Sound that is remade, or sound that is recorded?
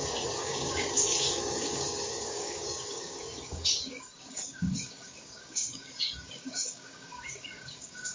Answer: remade